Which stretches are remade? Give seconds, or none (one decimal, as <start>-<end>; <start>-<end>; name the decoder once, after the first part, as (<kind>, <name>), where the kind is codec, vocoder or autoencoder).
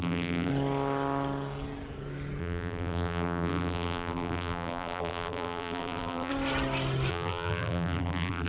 0.0-0.5 (vocoder, BigVGAN v2); 2.4-6.3; 7.1-8.5